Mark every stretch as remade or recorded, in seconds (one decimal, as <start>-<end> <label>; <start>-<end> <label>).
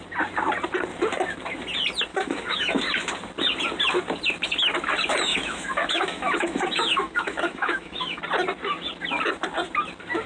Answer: 0.0-2.1 recorded; 2.1-2.8 remade; 2.8-5.3 recorded; 5.3-8.2 remade; 8.2-10.3 recorded